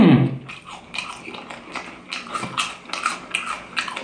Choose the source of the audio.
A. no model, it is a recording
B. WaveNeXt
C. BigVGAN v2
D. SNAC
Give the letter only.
A